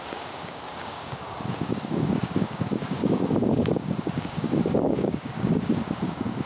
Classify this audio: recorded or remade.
remade